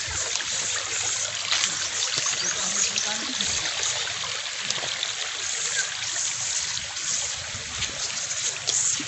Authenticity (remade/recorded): recorded